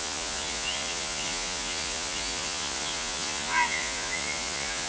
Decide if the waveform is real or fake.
fake